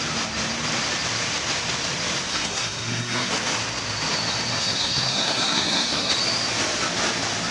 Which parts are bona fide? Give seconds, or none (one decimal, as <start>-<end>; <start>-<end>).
0.0-2.3; 3.3-4.5; 6.1-7.5